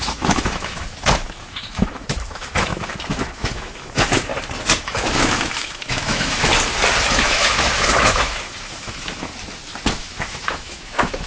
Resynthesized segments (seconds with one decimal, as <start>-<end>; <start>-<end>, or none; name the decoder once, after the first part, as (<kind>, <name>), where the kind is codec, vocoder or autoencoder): 0.0-4.3 (autoencoder, DAC-VAE); 4.8-6.5; 7.1-9.3; 10.0-11.3